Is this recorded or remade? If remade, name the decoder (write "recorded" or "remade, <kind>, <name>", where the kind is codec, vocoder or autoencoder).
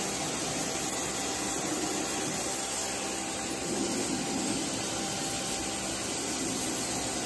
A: recorded